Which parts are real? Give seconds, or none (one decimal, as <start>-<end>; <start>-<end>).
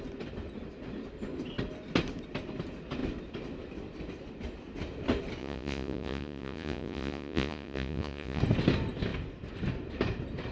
0.0-5.4; 8.4-10.5